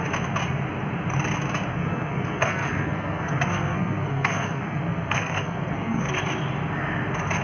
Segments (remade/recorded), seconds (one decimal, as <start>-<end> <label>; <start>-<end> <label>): 0.0-1.7 recorded; 1.7-6.1 remade; 6.1-7.4 recorded